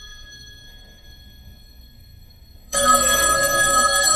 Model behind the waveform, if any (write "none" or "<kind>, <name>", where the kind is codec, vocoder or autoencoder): codec, SNAC